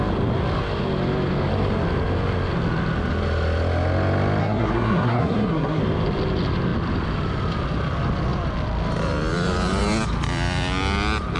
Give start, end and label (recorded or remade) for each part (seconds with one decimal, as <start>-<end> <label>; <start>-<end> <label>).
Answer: 0.0-4.4 recorded; 4.4-5.8 remade; 5.8-11.4 recorded